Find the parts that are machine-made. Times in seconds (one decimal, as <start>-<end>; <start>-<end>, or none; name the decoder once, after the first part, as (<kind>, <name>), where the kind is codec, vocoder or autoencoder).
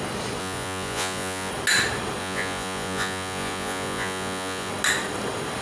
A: 0.4-1.5 (vocoder, Vocos); 2.2-4.7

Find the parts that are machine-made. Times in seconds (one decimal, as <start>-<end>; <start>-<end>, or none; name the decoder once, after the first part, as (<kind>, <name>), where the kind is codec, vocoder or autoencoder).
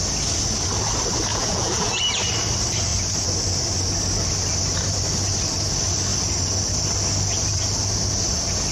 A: 1.3-2.0 (vocoder, Vocos)